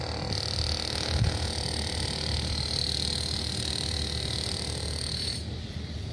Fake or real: real